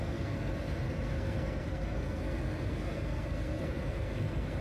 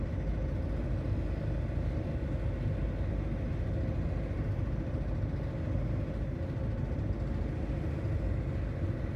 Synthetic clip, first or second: first